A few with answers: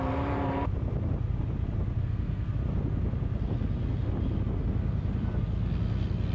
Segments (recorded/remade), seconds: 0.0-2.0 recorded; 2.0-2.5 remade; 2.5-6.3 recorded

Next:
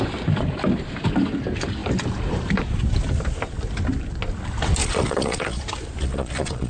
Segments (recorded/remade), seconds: 0.0-4.8 recorded; 4.8-5.6 remade; 5.6-6.0 recorded; 6.0-6.7 remade